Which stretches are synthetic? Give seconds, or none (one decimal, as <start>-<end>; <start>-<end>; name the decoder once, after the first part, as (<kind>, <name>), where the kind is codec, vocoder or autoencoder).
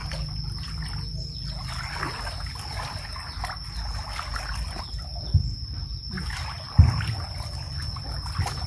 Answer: none